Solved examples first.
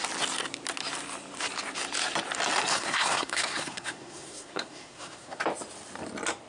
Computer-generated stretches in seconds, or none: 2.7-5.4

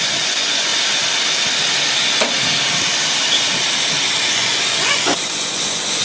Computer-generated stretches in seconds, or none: 0.0-0.7; 4.3-6.0

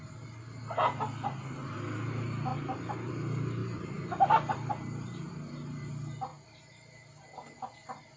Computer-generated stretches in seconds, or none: 3.6-4.7; 6.3-8.2

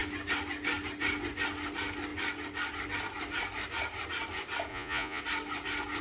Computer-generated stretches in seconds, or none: 4.7-5.2

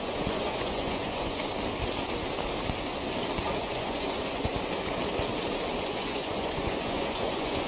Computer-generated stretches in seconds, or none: 0.0-1.4; 3.6-4.5; 5.8-7.7

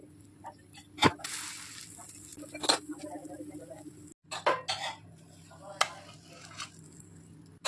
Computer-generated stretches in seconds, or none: none